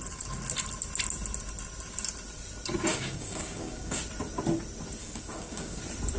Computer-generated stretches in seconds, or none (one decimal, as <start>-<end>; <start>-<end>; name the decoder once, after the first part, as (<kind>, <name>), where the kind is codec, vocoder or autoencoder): 2.9-4.0 (codec, DAC); 5.0-5.8